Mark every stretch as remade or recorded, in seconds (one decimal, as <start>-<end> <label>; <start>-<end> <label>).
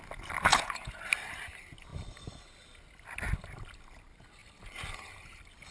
0.0-0.5 recorded; 0.5-1.0 remade; 1.0-5.7 recorded